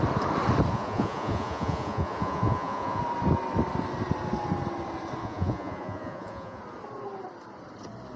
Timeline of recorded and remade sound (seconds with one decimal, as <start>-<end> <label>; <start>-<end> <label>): 0.0-0.7 recorded; 0.7-3.0 remade; 3.0-5.2 recorded; 5.2-6.6 remade; 6.6-8.2 recorded